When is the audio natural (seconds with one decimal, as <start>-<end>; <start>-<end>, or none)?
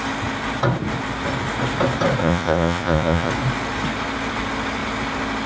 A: 0.0-2.2; 3.3-5.5